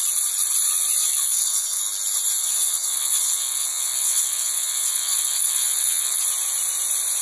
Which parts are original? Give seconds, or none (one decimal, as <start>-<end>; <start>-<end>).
0.0-1.0; 1.8-2.4; 6.2-7.2